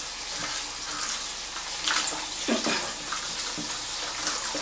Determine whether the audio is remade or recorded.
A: recorded